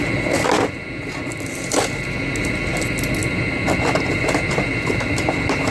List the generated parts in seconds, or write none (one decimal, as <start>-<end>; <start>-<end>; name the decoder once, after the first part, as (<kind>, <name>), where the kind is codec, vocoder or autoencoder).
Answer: none